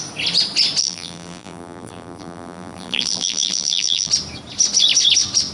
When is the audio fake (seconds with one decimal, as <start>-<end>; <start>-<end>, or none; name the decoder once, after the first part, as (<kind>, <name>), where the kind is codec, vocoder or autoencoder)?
0.8-4.1 (vocoder, BigVGAN v2)